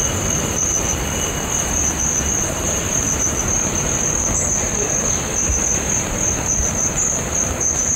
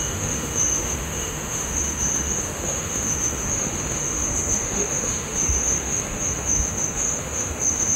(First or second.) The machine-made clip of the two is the second